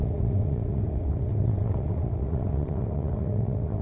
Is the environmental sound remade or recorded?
remade